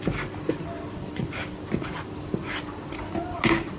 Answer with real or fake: real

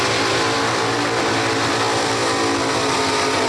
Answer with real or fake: real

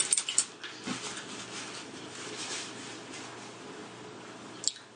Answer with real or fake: real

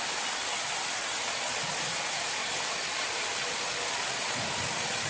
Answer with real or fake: real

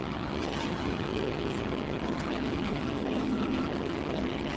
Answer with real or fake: fake